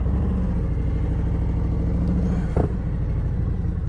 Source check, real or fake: real